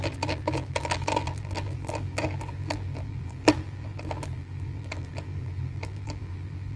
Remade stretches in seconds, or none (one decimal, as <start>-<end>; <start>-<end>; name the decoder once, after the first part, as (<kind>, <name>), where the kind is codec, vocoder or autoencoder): 0.0-6.8 (vocoder, BigVGAN v2)